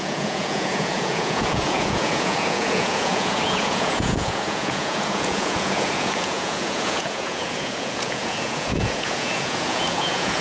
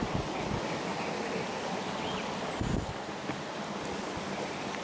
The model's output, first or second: first